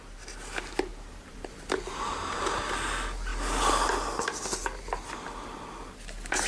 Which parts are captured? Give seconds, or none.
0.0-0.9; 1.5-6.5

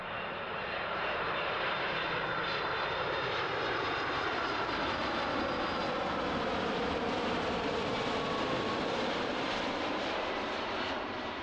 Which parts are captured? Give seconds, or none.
5.8-8.8

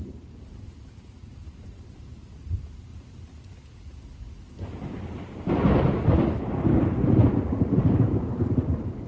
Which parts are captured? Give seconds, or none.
2.9-4.9